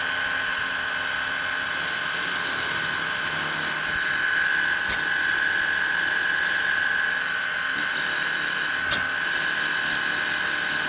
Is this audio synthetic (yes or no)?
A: no